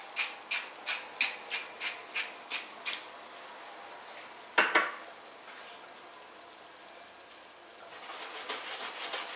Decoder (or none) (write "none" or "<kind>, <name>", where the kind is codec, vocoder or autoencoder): none